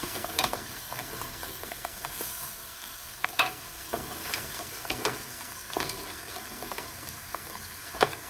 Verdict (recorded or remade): remade